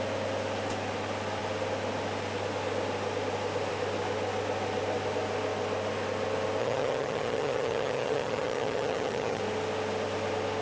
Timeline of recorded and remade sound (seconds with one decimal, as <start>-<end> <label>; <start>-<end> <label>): 0.0-6.6 recorded; 6.6-9.4 remade; 9.4-10.6 recorded